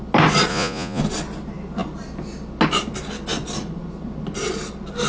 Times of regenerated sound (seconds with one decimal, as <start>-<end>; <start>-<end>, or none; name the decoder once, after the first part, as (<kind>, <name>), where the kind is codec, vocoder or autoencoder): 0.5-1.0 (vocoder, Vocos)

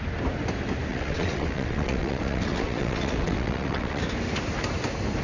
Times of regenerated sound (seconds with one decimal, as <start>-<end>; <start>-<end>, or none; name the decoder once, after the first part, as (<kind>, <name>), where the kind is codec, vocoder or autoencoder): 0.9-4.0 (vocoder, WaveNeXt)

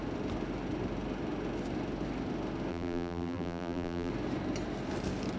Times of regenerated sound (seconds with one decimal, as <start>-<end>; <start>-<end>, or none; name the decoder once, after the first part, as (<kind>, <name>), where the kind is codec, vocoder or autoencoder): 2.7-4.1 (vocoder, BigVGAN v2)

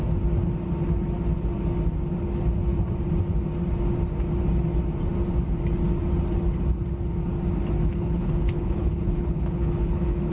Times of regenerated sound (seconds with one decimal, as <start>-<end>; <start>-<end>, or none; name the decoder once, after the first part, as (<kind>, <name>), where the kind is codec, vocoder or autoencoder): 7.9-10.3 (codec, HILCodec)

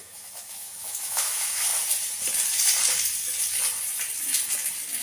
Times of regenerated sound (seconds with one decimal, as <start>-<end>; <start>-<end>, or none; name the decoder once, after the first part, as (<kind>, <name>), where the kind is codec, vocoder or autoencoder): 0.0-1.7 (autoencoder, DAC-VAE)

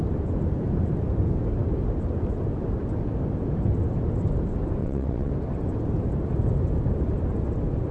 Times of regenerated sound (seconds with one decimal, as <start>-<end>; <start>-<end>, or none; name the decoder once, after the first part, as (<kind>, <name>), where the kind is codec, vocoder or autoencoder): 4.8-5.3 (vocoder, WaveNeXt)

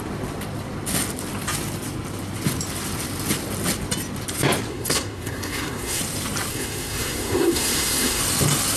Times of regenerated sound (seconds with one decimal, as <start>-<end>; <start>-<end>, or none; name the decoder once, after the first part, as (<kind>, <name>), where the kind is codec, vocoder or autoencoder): 4.7-6.0 (codec, SNAC); 6.5-8.2

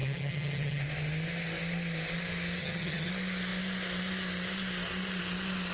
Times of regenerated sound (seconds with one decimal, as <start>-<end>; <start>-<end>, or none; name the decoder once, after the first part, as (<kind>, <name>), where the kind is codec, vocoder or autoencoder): 0.0-0.8 (vocoder, HiFi-GAN); 2.6-3.1